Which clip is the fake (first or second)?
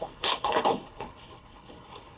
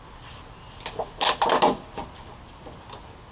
first